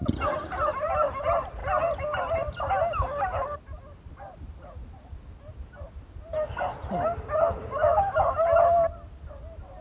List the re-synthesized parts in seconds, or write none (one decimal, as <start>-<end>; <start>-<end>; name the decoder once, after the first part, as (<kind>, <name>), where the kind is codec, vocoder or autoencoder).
none